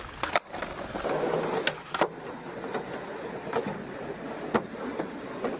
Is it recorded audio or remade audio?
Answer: recorded